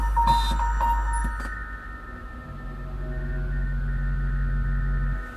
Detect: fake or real real